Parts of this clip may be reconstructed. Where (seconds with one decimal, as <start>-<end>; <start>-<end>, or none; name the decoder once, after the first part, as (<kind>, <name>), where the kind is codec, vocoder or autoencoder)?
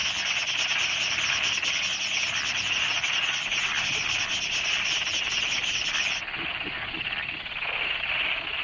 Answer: 0.0-8.6 (vocoder, BigVGAN v2)